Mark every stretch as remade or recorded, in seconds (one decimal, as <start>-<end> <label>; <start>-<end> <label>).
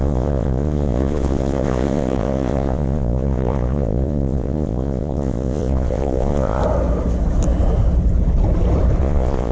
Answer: 0.0-6.6 remade; 6.6-9.0 recorded; 9.0-9.5 remade